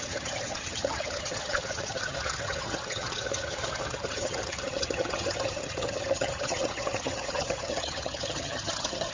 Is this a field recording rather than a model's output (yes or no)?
no